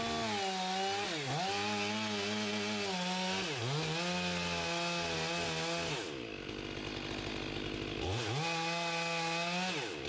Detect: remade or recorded recorded